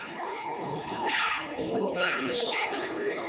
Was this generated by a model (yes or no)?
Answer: yes